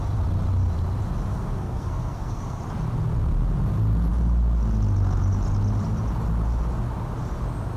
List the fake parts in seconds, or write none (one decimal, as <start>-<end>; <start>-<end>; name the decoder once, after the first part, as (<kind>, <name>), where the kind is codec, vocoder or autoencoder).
1.3-2.6 (codec, SNAC)